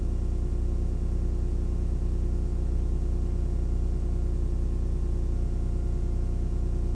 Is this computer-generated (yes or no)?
no